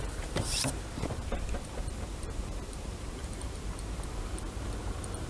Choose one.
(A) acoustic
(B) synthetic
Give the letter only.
B